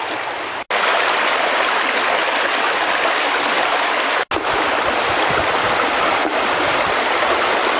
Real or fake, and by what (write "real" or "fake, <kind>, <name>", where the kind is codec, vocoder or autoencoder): real